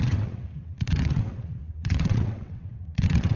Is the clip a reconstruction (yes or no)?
yes